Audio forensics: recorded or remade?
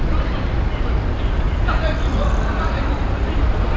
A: recorded